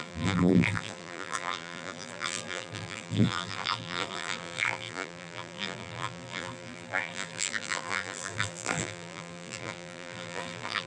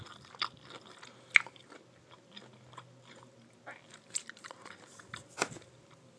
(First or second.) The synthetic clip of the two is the first